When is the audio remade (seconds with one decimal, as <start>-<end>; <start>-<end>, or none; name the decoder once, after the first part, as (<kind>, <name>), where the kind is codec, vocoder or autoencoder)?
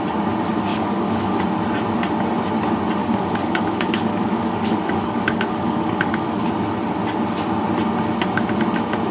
0.7-1.4 (codec, DAC); 3.0-6.5